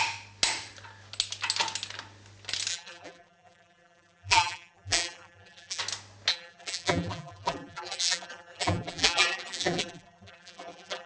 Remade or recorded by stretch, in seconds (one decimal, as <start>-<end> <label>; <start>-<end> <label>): 0.0-2.7 recorded; 2.7-5.8 remade; 5.8-6.3 recorded; 6.3-11.1 remade